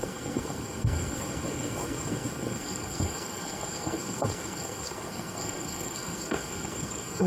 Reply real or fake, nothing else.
fake